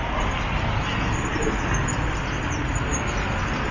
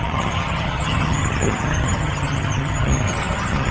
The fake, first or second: second